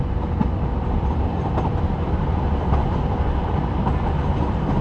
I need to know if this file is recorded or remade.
recorded